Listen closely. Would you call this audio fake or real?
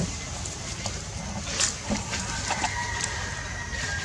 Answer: real